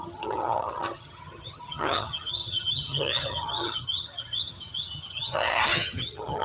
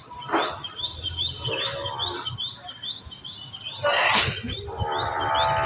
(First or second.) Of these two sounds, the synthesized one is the first